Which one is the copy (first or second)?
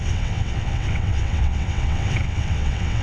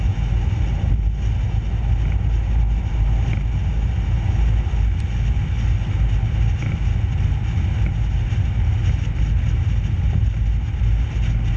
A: first